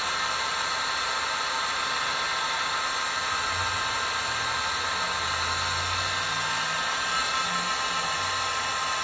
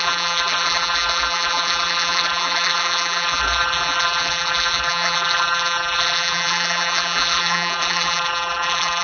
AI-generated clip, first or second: second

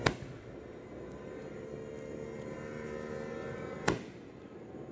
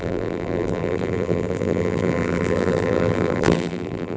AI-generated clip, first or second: second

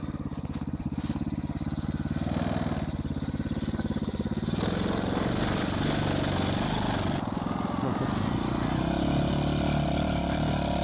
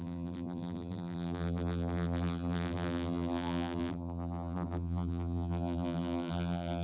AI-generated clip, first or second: second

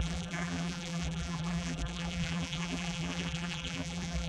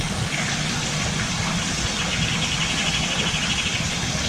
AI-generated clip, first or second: first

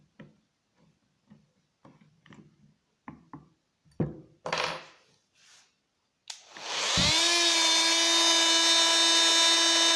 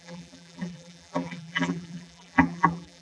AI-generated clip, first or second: second